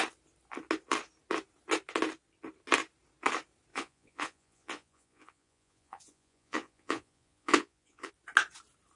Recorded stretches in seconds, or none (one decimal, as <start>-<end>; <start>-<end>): 0.0-3.7; 8.1-9.0